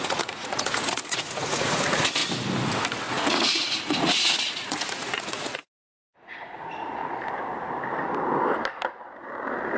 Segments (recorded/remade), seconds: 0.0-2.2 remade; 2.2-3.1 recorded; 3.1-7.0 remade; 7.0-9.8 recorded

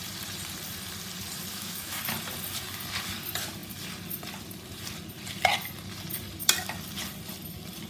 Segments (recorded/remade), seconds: 0.0-1.5 recorded; 1.5-2.0 remade; 2.0-7.9 recorded

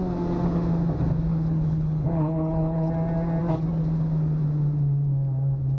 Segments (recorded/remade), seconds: 0.0-1.3 recorded; 1.3-2.9 remade; 2.9-5.8 recorded

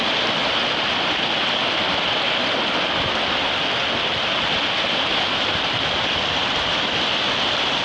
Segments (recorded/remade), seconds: 0.0-7.8 recorded